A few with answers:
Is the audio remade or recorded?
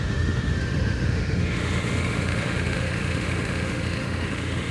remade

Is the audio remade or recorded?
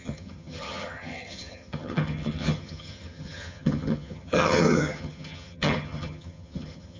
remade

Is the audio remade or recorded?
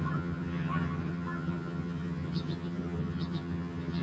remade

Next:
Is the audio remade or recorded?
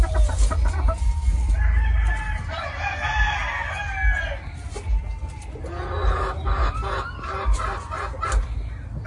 recorded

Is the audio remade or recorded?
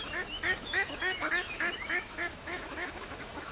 remade